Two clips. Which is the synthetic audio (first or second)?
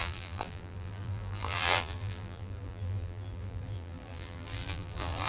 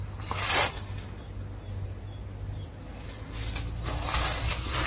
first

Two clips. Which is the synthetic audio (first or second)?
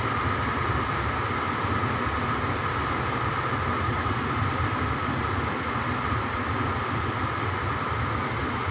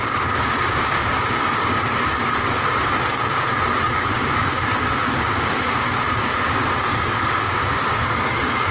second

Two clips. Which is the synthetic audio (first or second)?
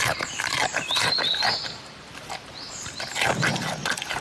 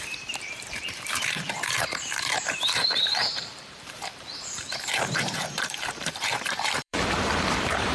second